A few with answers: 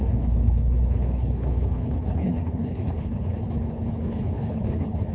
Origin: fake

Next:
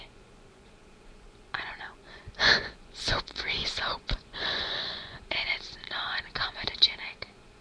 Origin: fake